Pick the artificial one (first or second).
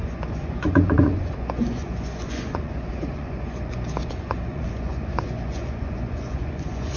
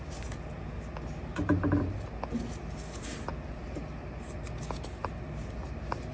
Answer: first